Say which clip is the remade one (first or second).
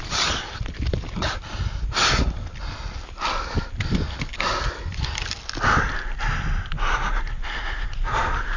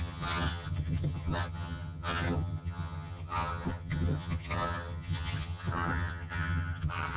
second